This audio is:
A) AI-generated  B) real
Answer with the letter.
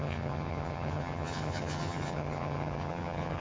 A